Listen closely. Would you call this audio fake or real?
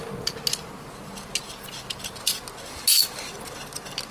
real